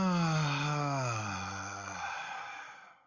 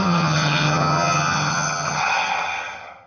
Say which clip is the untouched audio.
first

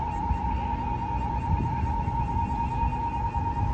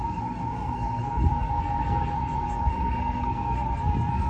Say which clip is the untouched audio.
first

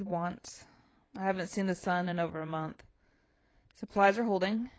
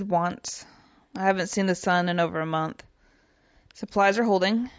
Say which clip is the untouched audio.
second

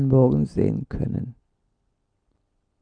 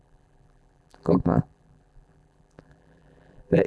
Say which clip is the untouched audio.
first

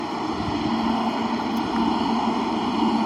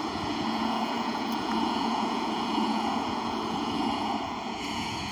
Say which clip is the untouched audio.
first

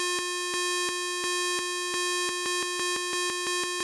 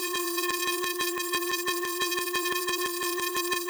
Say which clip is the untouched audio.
first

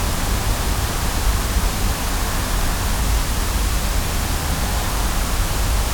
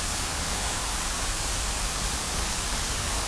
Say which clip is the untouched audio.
first